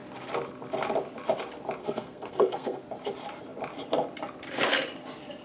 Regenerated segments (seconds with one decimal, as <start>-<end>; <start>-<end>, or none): 1.8-2.8

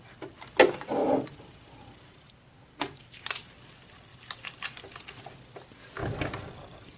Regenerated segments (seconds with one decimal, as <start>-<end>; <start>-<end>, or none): 1.0-3.3; 4.1-5.1; 6.0-7.0

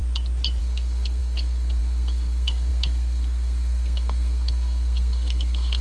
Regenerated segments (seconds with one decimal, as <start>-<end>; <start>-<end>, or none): 0.6-5.8

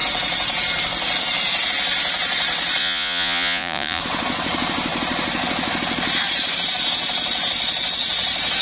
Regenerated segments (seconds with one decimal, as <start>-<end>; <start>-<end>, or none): 2.8-4.0

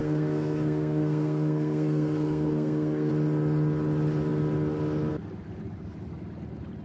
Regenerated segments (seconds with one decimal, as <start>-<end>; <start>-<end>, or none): 0.0-3.1

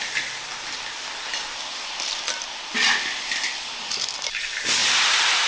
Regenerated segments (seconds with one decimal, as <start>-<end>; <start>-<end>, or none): none

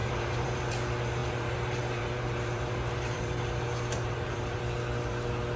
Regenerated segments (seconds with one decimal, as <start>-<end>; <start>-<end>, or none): 0.0-0.7; 1.2-4.6